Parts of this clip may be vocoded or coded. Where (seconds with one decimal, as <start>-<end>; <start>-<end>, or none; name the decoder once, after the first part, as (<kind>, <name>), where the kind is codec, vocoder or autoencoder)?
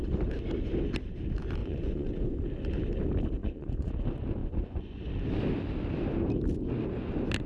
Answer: 1.6-2.1 (vocoder, Vocos); 3.4-3.9; 4.4-5.1